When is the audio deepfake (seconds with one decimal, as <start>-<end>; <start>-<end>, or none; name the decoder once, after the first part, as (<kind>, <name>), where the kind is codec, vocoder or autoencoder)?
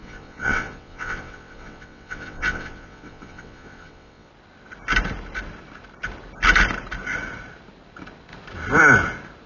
0.0-4.3 (vocoder, WaveNeXt)